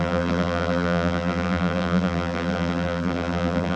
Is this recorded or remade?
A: remade